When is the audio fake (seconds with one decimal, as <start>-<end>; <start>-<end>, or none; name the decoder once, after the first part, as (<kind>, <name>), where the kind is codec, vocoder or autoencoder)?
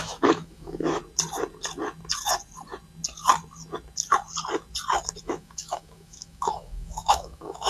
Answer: 0.0-1.0 (autoencoder, DAC-VAE); 5.2-7.7